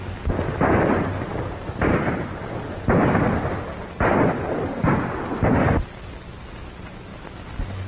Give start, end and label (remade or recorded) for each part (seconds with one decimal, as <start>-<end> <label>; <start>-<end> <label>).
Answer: 0.0-7.9 recorded